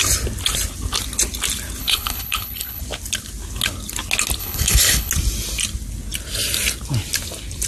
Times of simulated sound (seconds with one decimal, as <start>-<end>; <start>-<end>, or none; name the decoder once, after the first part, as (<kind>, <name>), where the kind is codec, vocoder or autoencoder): 1.8-2.8 (codec, HILCodec); 4.4-5.1